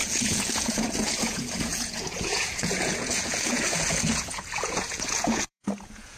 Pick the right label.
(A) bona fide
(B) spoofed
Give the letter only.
B